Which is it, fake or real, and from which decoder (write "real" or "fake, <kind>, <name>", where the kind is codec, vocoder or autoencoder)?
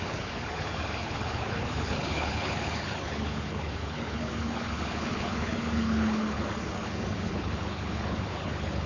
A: fake, codec, HILCodec